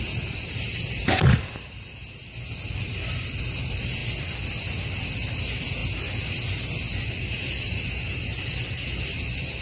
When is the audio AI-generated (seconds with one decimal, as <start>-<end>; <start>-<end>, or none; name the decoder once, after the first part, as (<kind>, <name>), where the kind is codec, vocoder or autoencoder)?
0.0-2.0 (vocoder, BigVGAN v2); 2.8-4.0; 4.6-5.8; 7.2-9.6